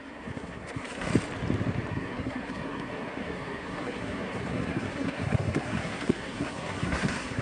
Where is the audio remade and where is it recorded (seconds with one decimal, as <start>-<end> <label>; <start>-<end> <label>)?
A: 0.0-1.1 remade; 1.1-1.9 recorded; 1.9-7.4 remade